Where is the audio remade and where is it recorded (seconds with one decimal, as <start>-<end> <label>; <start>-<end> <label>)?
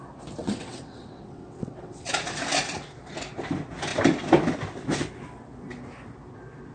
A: 0.0-0.4 recorded; 0.4-2.1 remade; 2.1-6.7 recorded